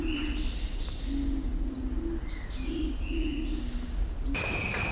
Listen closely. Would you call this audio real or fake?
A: real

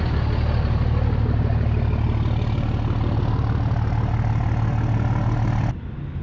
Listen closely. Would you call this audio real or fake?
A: real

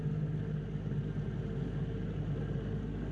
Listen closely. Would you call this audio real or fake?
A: real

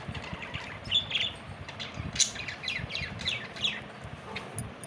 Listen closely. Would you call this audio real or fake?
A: real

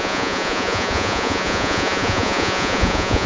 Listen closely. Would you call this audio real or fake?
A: fake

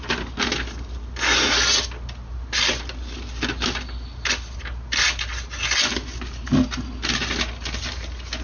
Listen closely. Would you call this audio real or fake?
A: real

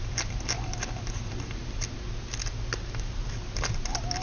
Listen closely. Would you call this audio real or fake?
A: real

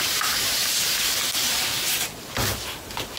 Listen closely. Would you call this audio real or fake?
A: real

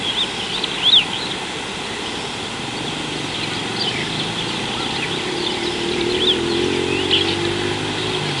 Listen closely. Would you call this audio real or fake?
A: real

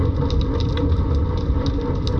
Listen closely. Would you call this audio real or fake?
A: real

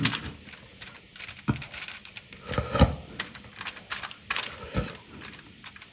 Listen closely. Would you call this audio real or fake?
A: fake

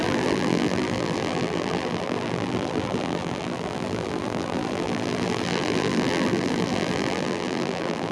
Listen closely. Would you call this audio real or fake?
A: fake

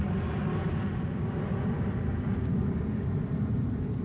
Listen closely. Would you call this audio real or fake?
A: real